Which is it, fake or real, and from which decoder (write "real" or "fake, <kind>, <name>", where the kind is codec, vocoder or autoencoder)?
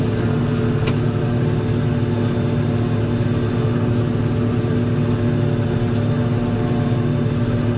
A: real